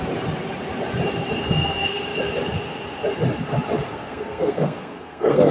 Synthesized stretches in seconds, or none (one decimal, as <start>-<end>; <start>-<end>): 1.4-2.0; 3.9-5.5